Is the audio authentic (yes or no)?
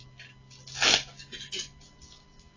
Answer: yes